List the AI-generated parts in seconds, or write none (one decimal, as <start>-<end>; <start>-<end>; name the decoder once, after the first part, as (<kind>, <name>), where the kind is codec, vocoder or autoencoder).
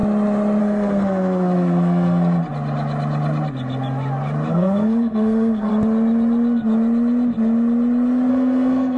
0.6-2.4 (codec, SNAC); 4.5-5.7; 8.3-9.0